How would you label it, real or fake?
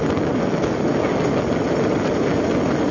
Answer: real